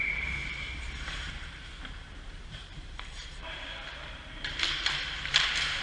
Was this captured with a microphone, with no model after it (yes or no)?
no